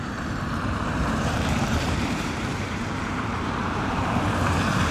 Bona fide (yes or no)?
no